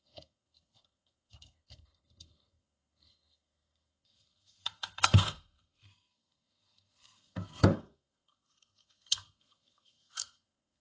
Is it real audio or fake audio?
fake